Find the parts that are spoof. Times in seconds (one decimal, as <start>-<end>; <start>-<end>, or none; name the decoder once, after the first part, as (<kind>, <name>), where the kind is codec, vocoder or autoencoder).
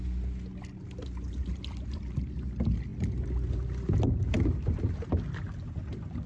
none